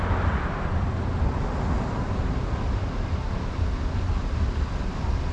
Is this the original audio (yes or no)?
yes